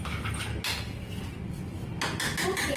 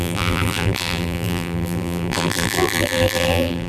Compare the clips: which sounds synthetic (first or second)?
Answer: second